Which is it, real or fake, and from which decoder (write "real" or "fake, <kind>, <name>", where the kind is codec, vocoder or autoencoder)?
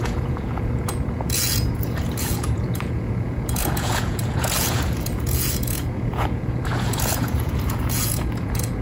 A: fake, vocoder, Vocos